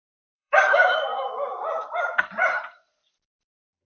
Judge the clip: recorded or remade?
remade